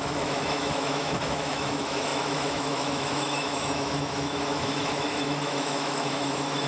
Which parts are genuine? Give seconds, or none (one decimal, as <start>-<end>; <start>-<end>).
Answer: none